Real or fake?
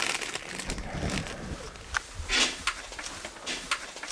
real